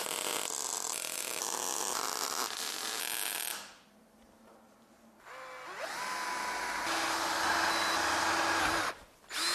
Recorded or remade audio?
recorded